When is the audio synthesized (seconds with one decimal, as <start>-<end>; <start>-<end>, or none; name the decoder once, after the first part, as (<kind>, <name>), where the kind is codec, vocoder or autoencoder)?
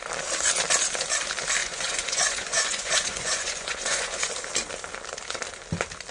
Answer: 1.6-4.3 (vocoder, Vocos)